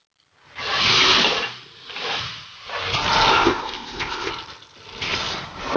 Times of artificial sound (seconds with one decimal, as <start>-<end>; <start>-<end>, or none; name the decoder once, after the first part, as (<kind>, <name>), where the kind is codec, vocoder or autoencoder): 3.3-4.3 (codec, ZipCodec)